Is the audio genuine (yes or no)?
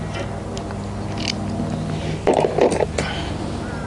yes